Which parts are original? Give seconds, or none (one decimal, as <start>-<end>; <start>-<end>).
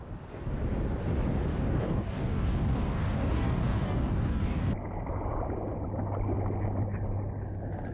0.0-1.5; 4.7-7.9